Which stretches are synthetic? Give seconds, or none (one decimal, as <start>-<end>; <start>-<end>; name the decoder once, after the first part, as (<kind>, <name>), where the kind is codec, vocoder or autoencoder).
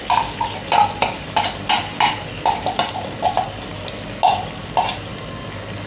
none